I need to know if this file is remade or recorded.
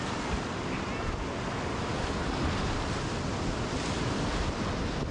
recorded